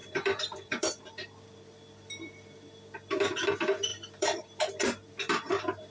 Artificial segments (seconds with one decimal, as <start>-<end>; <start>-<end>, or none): 0.0-3.5; 3.9-5.5